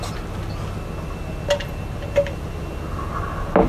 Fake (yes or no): no